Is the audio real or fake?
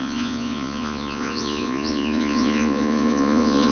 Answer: fake